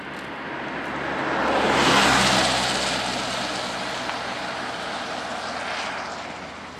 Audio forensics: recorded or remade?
recorded